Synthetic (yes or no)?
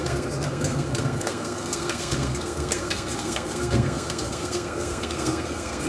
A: yes